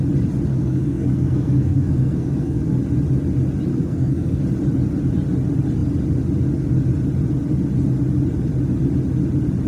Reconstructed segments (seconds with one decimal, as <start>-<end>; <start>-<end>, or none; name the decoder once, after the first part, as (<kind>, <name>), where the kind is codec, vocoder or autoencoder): 0.5-2.6 (codec, SNAC); 3.7-4.4